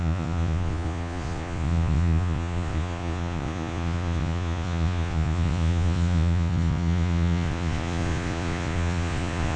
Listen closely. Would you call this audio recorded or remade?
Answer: remade